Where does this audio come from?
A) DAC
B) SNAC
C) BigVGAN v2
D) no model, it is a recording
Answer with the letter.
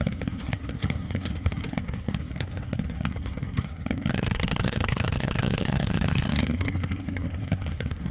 B